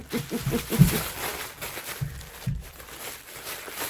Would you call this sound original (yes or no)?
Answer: yes